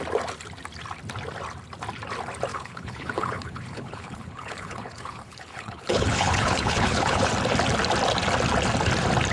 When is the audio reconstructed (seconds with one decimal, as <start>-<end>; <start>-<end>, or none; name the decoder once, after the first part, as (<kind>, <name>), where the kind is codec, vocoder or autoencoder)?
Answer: 2.5-7.3 (codec, HILCodec)